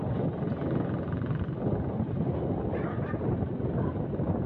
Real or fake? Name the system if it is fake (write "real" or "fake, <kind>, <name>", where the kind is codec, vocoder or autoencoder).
real